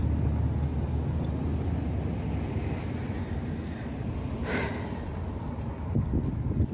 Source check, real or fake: real